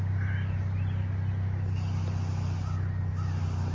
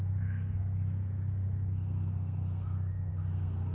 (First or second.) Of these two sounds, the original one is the first